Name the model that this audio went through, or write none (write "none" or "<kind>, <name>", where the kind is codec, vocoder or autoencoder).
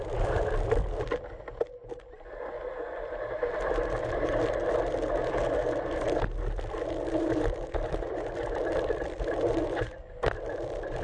vocoder, BigVGAN v2